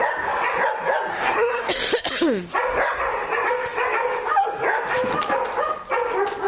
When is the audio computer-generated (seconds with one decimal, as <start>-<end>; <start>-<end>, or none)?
1.1-1.7